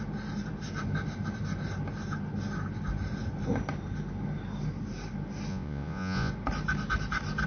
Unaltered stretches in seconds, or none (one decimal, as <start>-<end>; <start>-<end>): 0.0-5.5; 6.3-7.5